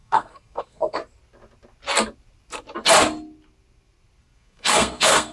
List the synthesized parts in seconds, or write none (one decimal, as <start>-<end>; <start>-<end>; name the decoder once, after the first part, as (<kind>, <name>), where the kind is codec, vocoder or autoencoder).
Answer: 0.0-1.0 (codec, SNAC); 4.2-5.3

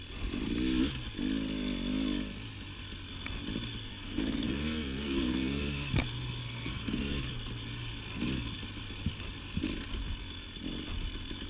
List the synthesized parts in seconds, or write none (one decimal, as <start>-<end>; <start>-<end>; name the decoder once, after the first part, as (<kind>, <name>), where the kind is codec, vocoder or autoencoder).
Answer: 3.9-5.6 (codec, SNAC); 6.4-7.2

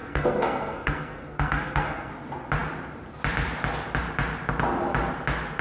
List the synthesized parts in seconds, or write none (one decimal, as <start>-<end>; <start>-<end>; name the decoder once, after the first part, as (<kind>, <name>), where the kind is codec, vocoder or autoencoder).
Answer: 0.0-2.1 (codec, SNAC)

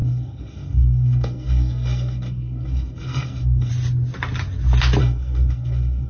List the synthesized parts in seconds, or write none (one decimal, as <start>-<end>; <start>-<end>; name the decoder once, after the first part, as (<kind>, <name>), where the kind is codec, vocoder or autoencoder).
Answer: 0.0-3.7 (codec, SNAC); 5.0-6.1

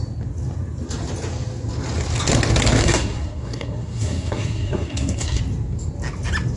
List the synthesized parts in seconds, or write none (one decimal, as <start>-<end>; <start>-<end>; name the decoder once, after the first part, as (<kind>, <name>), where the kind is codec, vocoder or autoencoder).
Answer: 2.8-5.4 (codec, SNAC)

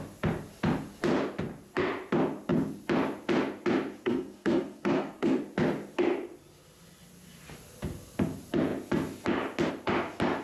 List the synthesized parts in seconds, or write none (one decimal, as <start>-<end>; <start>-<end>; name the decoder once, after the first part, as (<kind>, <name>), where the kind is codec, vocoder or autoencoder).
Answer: 4.0-5.4 (codec, SNAC)

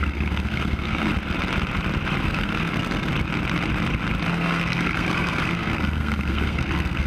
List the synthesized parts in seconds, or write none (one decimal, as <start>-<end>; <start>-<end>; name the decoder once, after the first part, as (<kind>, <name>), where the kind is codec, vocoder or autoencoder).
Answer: 0.0-1.1 (codec, SNAC); 2.2-3.1; 4.3-7.1